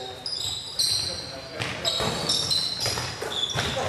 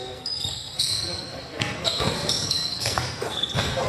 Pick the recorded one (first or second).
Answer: first